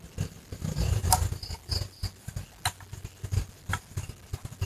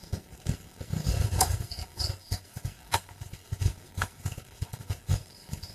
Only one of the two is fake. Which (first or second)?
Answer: second